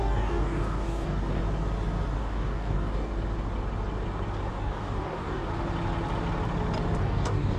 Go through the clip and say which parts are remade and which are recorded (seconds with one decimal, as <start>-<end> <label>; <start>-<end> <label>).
0.0-1.4 remade; 1.4-2.2 recorded; 2.2-3.1 remade; 3.1-4.5 recorded; 4.5-5.5 remade; 5.5-7.0 recorded; 7.0-7.6 remade